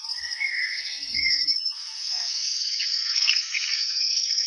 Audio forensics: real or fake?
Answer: fake